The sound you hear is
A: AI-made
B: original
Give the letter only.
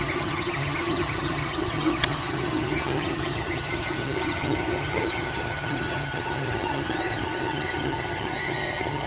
A